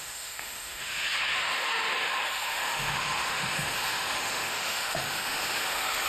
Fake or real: fake